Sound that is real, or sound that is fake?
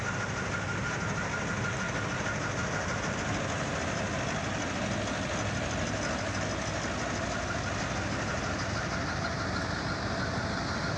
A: real